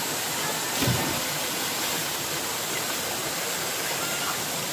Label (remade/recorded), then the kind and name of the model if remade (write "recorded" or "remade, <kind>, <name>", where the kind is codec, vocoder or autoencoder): recorded